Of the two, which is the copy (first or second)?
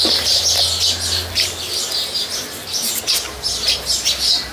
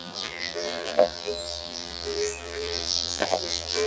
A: second